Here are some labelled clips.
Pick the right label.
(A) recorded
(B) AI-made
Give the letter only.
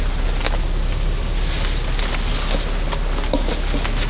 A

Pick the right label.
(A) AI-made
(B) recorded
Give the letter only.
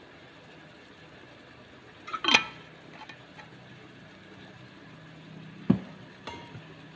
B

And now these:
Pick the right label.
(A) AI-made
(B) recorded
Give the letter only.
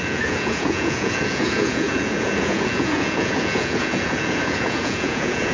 A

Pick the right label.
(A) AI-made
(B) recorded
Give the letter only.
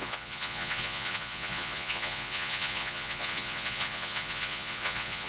A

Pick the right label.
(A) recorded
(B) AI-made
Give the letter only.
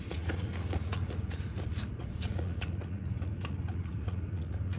B